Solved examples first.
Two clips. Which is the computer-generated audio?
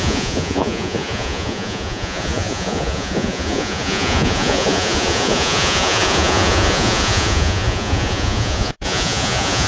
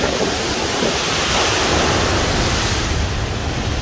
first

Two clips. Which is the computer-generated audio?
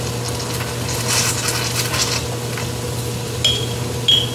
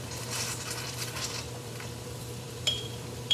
second